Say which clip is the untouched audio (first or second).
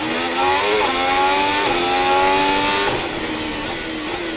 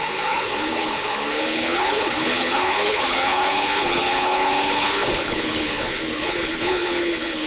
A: first